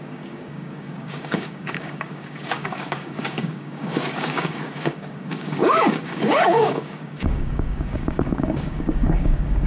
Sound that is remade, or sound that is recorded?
remade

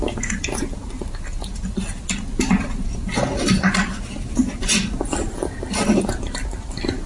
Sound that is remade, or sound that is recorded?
recorded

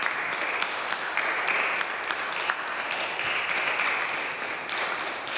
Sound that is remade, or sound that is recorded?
recorded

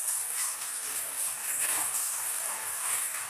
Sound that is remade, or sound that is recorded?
remade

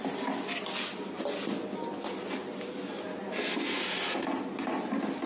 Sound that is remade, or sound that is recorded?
recorded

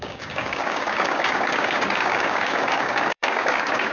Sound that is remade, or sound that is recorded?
remade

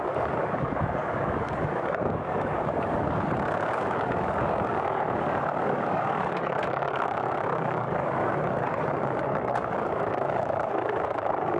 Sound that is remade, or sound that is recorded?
remade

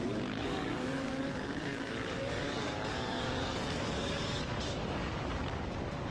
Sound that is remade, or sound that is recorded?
remade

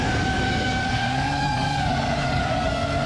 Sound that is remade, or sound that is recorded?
remade